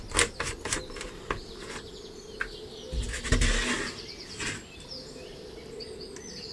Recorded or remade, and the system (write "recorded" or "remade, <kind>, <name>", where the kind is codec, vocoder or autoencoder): recorded